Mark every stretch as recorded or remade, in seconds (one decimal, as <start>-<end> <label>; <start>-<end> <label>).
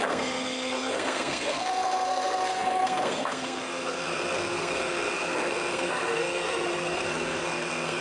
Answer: 0.0-8.0 remade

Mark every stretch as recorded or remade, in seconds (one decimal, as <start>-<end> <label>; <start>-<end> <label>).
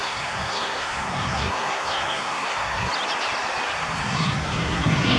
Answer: 0.0-2.9 remade; 2.9-4.0 recorded; 4.0-5.2 remade